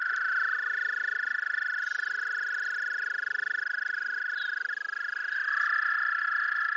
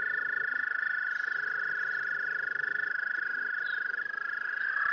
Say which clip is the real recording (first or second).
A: first